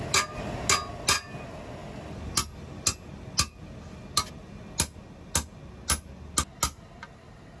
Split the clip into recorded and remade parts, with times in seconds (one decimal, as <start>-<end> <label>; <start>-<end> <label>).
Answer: 0.0-7.6 recorded